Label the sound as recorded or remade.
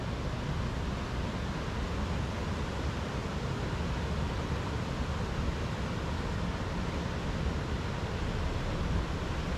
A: recorded